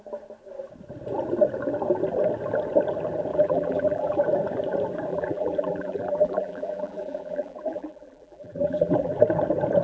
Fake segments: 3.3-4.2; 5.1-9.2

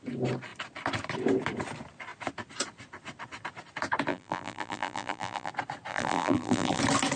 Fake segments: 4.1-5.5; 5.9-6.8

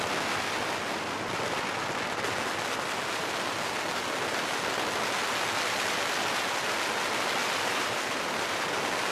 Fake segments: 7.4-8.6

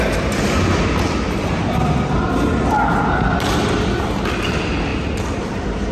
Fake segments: none

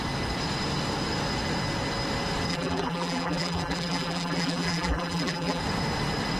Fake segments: 2.5-5.6

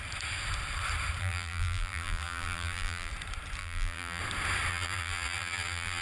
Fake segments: 1.2-3.1; 3.6-4.2; 4.7-6.0